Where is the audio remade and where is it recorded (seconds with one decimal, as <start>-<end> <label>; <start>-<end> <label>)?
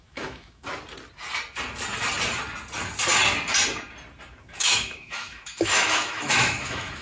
0.0-0.7 remade; 0.7-4.4 recorded; 4.4-7.0 remade